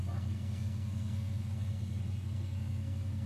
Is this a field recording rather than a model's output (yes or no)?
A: no